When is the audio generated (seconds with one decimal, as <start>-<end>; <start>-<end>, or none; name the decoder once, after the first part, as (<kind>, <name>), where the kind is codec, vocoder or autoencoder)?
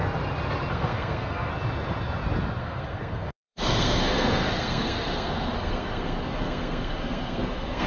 0.7-1.5 (codec, SNAC); 2.6-7.9